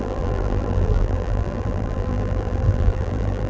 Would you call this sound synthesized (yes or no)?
yes